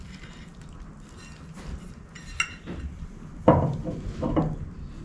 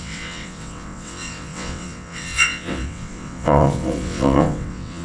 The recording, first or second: first